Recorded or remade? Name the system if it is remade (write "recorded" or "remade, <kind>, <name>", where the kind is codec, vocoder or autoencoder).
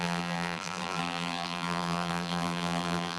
remade, vocoder, BigVGAN v2